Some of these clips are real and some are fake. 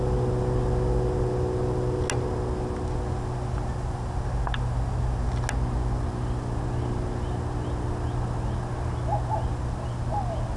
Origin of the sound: real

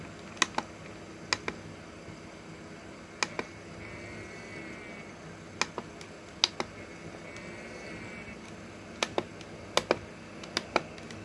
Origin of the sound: real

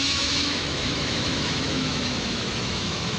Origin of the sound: fake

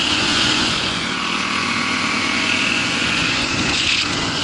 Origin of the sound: fake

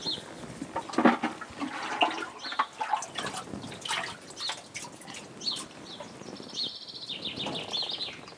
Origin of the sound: real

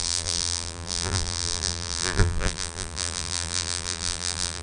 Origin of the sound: fake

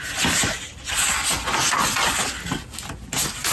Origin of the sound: real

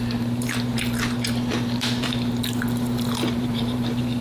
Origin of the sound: fake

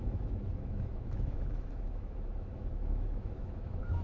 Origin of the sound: fake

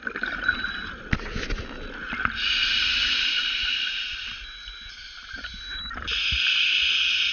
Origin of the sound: real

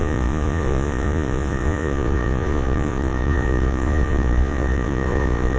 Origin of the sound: fake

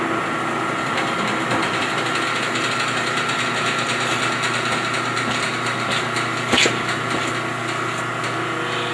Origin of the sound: real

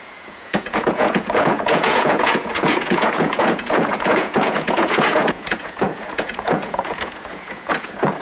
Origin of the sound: fake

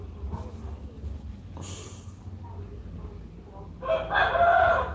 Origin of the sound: real